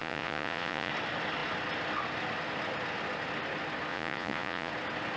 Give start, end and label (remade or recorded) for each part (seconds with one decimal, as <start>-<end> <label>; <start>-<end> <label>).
0.0-0.9 remade; 0.9-3.9 recorded; 3.9-4.7 remade; 4.7-5.2 recorded